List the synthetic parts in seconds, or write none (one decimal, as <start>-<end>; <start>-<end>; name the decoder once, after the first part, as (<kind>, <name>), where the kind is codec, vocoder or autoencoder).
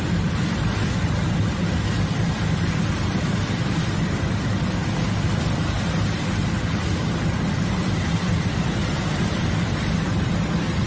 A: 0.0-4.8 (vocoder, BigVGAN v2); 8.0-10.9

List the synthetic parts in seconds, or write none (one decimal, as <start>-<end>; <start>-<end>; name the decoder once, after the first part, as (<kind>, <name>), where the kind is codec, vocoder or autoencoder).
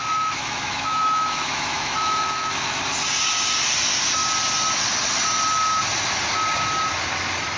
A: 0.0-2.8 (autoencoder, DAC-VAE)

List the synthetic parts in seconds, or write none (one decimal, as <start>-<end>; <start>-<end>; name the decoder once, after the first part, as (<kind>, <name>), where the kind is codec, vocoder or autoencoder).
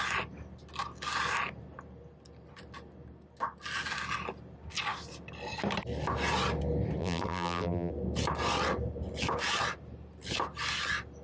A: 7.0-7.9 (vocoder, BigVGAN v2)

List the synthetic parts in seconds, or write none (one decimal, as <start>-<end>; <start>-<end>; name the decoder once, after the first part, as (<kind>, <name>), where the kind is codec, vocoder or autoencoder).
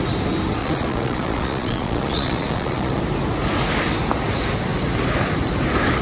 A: 0.6-3.0 (vocoder, Vocos)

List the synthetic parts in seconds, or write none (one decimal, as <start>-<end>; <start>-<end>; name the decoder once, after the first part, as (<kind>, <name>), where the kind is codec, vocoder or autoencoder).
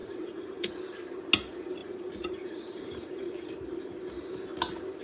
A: 0.0-0.7 (vocoder, Vocos); 1.8-3.5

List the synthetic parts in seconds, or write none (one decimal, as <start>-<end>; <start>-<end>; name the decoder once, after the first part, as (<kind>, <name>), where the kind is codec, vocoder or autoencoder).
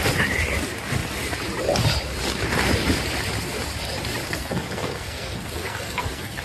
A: 4.2-6.4 (codec, SNAC)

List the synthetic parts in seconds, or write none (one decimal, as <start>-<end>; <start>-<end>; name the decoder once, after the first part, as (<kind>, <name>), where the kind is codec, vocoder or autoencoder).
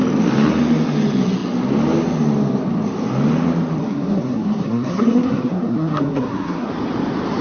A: 3.8-6.7 (codec, SNAC)